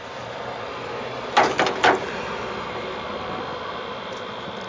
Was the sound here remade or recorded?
remade